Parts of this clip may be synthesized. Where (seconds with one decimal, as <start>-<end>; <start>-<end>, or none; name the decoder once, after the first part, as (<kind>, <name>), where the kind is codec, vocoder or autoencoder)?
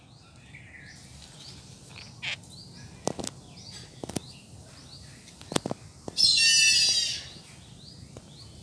none